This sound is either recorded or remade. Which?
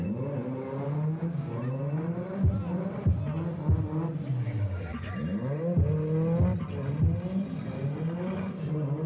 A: recorded